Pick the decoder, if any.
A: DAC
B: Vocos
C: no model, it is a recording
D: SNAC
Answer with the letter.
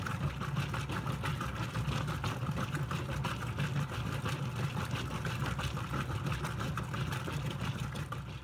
C